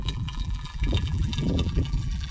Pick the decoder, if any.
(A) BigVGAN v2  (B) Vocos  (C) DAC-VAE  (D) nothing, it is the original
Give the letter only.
A